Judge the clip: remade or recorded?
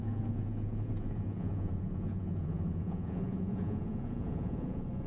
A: remade